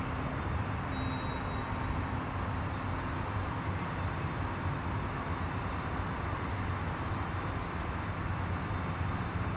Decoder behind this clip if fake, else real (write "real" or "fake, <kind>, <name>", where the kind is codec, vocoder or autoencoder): real